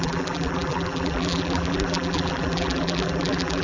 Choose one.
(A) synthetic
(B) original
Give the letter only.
A